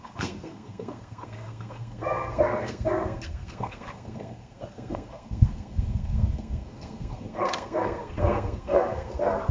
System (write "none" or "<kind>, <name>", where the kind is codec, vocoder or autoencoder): codec, SNAC